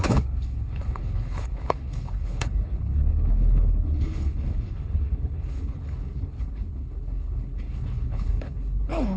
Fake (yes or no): yes